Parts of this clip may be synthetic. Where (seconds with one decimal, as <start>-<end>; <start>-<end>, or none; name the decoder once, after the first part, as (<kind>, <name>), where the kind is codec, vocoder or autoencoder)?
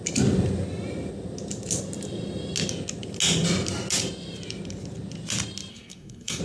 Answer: 5.7-6.4 (codec, SNAC)